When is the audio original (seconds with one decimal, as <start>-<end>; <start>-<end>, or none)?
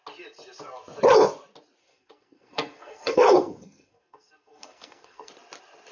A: 0.0-1.8; 5.3-5.9